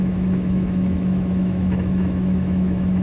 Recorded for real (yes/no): no